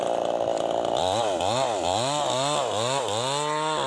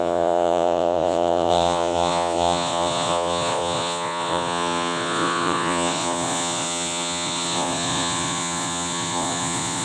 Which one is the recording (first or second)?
first